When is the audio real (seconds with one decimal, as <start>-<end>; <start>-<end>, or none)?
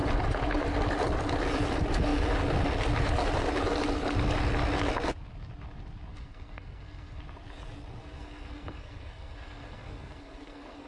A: 0.0-6.1; 7.2-8.0